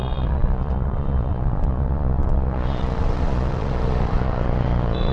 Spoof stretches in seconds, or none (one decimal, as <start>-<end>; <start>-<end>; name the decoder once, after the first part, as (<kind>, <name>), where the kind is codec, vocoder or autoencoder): 0.0-5.1 (vocoder, Vocos)